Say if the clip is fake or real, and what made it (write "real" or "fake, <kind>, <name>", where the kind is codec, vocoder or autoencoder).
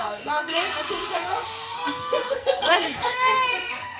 fake, codec, SNAC